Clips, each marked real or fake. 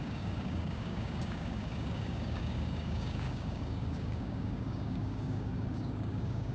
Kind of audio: fake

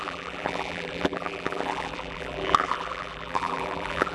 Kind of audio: fake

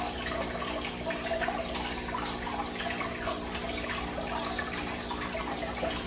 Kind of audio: real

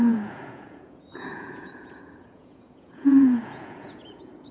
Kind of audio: fake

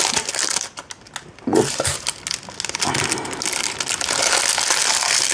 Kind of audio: real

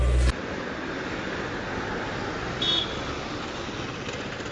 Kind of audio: real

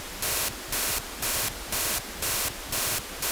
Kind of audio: real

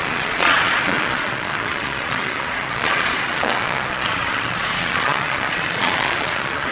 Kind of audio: fake